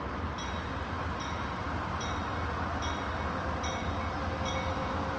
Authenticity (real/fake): real